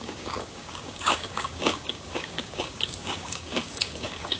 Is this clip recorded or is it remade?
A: remade